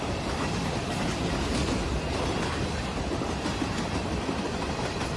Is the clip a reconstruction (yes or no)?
no